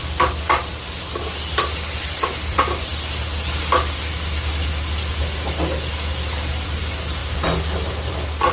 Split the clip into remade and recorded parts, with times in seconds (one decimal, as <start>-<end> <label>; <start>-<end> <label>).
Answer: 0.0-8.5 recorded